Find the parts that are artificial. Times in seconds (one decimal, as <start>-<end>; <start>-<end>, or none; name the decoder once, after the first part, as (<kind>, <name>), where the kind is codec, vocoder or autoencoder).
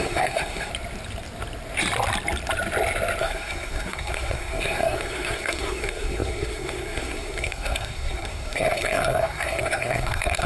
0.0-0.7 (codec, SNAC); 3.2-10.5